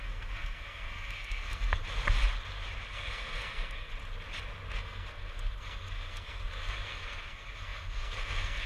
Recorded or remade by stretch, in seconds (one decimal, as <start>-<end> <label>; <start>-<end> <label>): 0.0-1.8 remade; 1.8-2.9 recorded; 2.9-3.9 remade; 3.9-4.7 recorded; 4.7-8.7 remade